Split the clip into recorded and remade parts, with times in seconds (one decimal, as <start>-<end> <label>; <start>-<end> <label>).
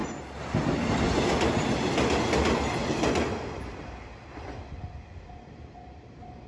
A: 0.0-2.8 recorded; 2.8-3.6 remade; 3.6-6.5 recorded